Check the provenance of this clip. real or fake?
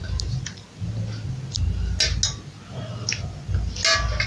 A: real